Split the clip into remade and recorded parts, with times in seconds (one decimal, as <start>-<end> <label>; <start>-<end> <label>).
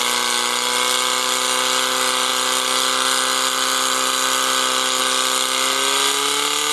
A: 0.0-6.7 recorded